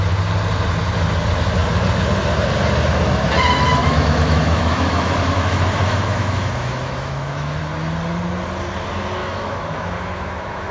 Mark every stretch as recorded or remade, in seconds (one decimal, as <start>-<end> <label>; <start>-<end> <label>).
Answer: 0.0-3.8 recorded; 3.8-7.6 remade; 7.6-9.2 recorded; 9.2-10.7 remade